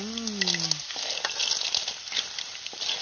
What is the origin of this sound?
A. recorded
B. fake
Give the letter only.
A